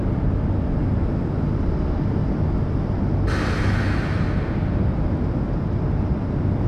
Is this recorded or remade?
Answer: recorded